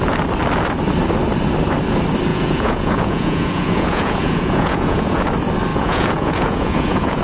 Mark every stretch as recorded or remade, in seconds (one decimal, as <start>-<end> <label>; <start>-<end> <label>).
0.0-2.3 recorded; 2.3-5.3 remade; 5.3-5.7 recorded; 5.7-7.2 remade